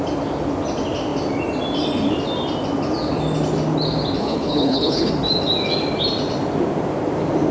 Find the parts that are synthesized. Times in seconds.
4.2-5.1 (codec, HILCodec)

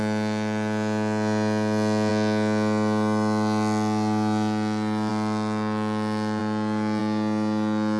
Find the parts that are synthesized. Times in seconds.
none